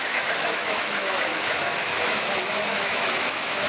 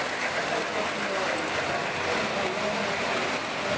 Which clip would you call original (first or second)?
second